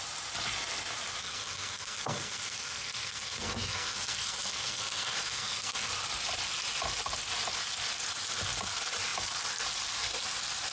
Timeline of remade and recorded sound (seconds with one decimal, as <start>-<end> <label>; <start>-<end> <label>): 0.0-1.2 recorded; 1.2-5.9 remade; 5.9-10.7 recorded